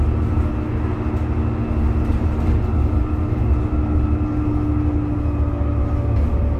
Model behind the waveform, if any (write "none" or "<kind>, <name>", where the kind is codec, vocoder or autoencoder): none